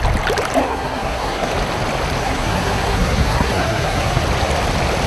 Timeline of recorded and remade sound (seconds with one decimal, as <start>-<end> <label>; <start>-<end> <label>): 0.0-0.6 recorded; 0.6-1.5 remade; 1.5-2.2 recorded; 2.2-4.2 remade; 4.2-5.1 recorded